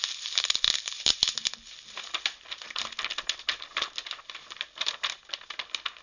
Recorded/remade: recorded